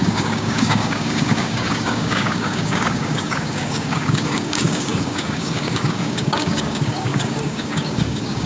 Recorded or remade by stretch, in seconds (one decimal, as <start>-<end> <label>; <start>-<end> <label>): 0.0-8.5 remade